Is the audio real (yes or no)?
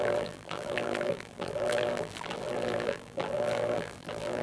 no